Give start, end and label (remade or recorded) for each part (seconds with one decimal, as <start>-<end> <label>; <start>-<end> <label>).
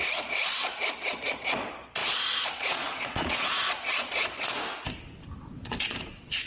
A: 0.0-4.6 remade; 4.6-5.4 recorded; 5.4-6.5 remade